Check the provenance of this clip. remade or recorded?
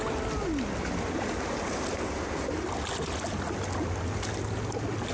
recorded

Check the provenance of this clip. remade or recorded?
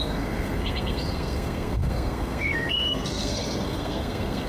remade